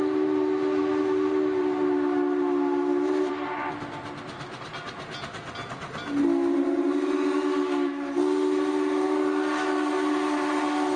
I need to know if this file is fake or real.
real